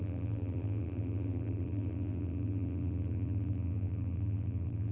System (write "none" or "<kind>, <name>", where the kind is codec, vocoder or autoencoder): vocoder, BigVGAN v2